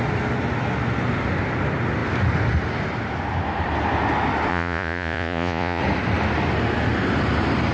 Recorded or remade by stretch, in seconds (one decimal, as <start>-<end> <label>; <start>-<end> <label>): 0.0-4.5 recorded; 4.5-5.8 remade; 5.8-7.7 recorded